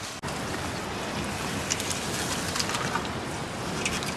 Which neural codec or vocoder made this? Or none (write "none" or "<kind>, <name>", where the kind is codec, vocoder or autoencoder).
none